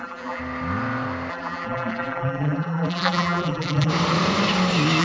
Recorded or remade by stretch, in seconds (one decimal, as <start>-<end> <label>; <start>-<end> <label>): 0.0-0.4 remade; 0.4-1.3 recorded; 1.3-3.9 remade; 3.9-5.0 recorded